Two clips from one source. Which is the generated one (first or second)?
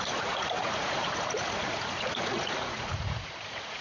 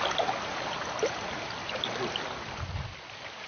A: first